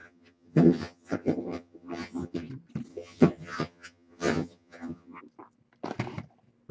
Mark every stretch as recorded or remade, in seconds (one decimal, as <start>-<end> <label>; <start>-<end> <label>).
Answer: 0.0-2.5 remade; 2.5-2.9 recorded; 2.9-5.2 remade; 5.2-6.7 recorded